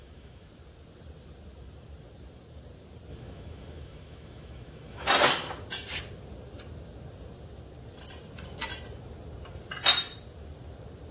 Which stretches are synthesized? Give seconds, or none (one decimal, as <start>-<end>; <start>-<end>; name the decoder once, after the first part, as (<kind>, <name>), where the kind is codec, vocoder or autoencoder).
0.0-0.5 (autoencoder, DAC-VAE); 3.1-5.1